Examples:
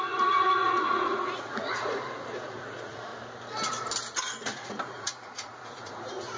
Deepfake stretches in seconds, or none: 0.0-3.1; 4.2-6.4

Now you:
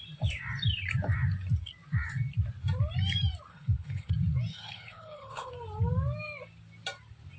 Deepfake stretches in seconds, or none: 3.5-4.1; 4.5-5.5

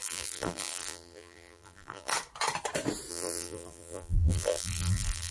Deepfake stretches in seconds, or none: 0.0-2.1; 3.1-5.3

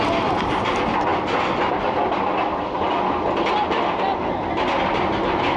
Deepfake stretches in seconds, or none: none